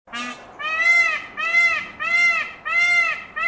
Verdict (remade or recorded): recorded